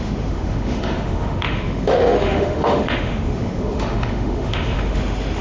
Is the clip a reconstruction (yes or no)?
yes